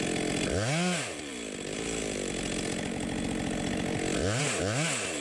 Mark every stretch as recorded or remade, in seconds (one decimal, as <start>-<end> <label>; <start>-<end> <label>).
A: 0.0-5.2 recorded